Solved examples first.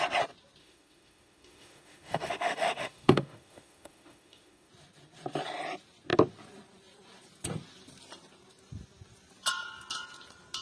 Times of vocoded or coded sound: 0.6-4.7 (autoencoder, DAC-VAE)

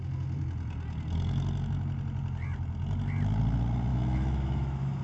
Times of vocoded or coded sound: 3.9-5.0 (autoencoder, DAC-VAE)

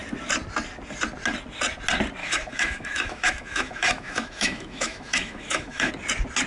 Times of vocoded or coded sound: 2.2-5.9 (autoencoder, DAC-VAE)